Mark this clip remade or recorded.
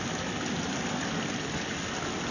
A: recorded